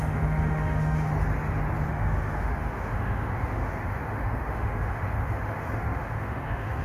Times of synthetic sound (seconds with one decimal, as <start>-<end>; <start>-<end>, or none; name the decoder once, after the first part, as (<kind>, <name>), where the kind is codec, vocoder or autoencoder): 0.0-1.1 (autoencoder, DAC-VAE); 1.9-6.8